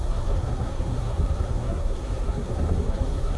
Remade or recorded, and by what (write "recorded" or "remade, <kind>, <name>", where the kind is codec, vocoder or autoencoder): remade, codec, SNAC